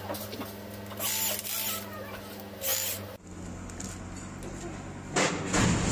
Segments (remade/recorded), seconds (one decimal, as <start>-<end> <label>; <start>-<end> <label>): 0.0-5.9 recorded